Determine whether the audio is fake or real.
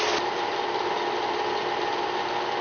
real